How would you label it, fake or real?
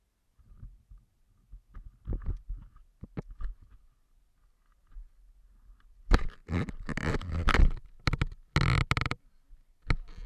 real